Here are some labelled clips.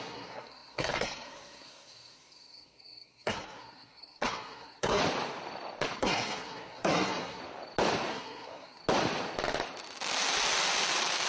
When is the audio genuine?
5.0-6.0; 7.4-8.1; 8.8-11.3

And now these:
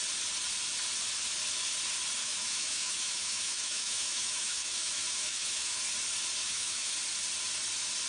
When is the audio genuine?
0.0-2.2; 5.8-6.4; 6.9-8.1